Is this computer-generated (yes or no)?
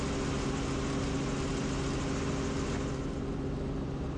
no